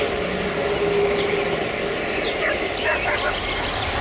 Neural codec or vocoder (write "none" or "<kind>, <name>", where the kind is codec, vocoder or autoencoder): none